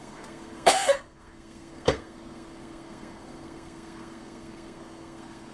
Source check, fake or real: fake